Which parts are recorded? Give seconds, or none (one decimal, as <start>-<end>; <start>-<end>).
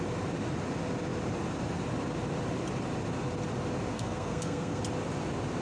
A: 0.0-3.9; 4.8-5.6